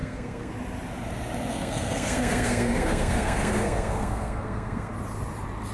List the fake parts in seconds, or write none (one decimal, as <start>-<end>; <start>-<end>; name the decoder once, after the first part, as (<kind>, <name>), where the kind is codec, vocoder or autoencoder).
0.0-0.5 (codec, SNAC); 1.5-4.9